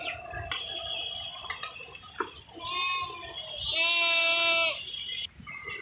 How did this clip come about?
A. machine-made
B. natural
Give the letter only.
B